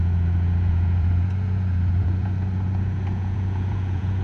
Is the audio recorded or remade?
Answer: remade